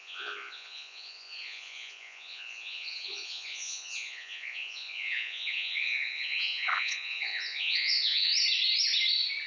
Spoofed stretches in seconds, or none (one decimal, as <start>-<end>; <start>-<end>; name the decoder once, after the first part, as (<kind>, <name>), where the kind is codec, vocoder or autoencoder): 0.0-8.3 (vocoder, Vocos)